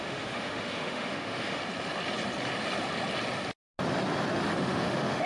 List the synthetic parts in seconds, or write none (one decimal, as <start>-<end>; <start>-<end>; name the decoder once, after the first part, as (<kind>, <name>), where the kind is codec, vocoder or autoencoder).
0.0-1.6 (autoencoder, DAC-VAE); 4.5-5.3